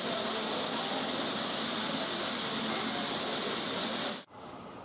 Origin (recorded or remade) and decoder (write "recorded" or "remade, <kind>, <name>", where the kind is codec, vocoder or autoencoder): recorded